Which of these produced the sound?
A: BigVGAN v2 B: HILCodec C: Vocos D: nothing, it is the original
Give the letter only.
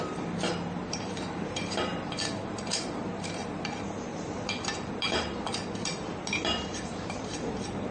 A